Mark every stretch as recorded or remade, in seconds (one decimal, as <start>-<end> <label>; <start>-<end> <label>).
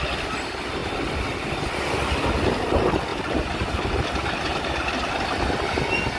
0.0-3.1 recorded; 3.1-5.1 remade; 5.1-6.2 recorded